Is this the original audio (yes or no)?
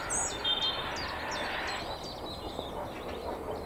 yes